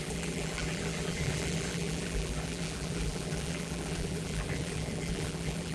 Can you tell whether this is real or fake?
fake